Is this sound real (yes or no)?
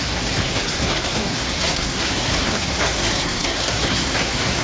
no